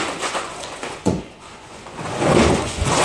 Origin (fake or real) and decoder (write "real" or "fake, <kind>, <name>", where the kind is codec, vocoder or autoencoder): fake, vocoder, Vocos